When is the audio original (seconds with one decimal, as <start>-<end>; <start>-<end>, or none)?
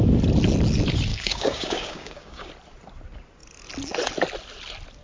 0.0-1.1; 2.5-5.0